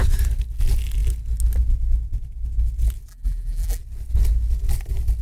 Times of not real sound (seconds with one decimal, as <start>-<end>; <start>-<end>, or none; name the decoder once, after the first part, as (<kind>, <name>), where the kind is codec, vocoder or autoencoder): 3.1-3.8 (vocoder, BigVGAN v2)